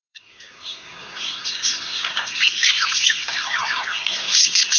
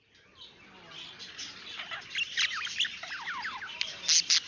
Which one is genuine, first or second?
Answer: second